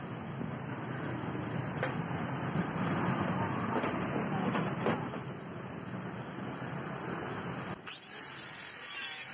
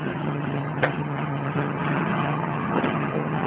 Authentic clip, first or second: first